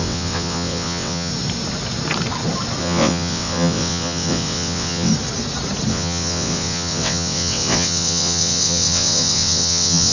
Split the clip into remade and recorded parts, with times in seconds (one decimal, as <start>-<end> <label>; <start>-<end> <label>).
0.0-1.3 remade; 1.3-2.8 recorded; 2.8-5.1 remade; 5.1-5.9 recorded; 5.9-10.1 remade